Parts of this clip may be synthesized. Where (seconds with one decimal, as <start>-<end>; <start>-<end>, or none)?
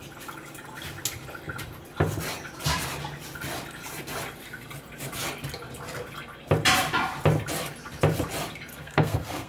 8.7-9.5